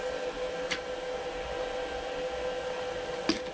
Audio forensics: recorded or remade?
recorded